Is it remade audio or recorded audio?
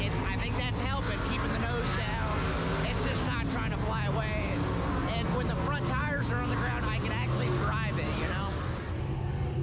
recorded